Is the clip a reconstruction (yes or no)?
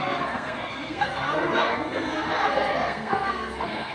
yes